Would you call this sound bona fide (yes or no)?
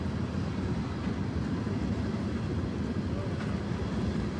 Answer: yes